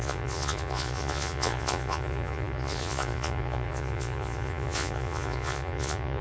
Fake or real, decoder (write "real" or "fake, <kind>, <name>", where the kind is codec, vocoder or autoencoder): fake, vocoder, Vocos